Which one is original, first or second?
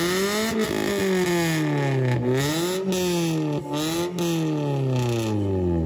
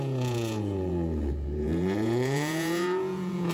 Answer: first